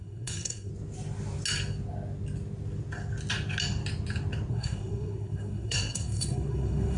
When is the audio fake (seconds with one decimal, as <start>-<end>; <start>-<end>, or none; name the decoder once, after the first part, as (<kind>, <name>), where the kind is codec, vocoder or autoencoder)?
0.0-0.7 (codec, SNAC); 4.5-7.0